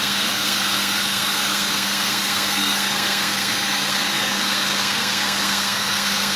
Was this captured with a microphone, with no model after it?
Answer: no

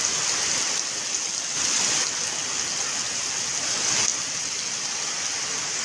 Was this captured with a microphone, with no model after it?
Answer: yes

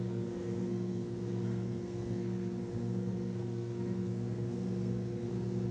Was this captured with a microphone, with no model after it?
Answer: no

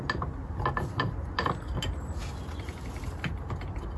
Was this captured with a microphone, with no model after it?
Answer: yes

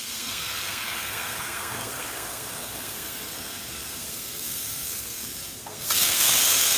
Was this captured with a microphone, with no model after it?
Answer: no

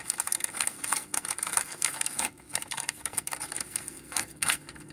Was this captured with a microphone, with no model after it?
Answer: no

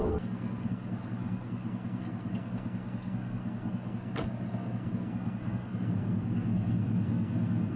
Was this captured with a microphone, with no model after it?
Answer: no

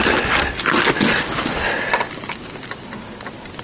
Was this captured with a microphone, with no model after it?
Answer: yes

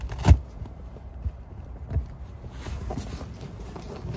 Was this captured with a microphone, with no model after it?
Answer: yes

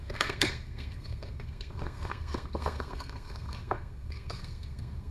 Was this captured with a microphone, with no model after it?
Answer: no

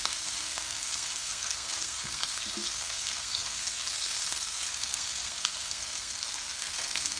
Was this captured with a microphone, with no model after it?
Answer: no